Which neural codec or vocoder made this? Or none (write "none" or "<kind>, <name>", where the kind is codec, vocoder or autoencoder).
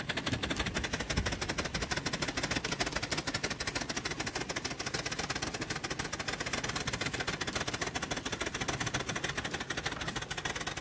none